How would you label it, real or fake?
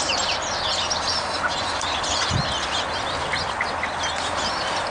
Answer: real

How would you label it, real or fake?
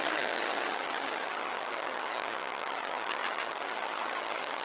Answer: fake